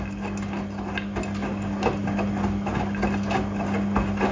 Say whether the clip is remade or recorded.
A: recorded